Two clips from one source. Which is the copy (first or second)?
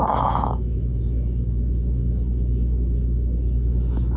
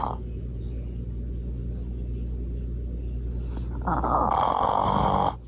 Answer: first